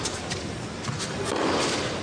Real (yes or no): yes